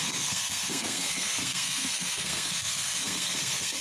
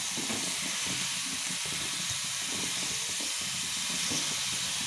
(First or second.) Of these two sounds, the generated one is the first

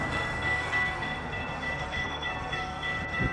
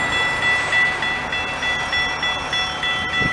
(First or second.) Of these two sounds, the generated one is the first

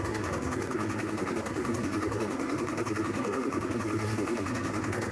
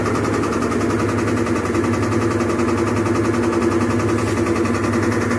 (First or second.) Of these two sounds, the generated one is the first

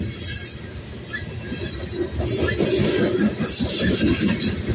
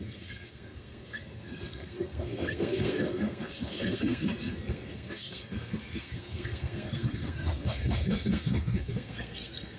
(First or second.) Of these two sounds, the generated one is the second